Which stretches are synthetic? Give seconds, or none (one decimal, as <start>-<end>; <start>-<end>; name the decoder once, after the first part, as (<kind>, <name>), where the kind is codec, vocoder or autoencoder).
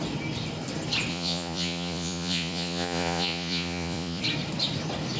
1.1-4.2 (vocoder, Vocos)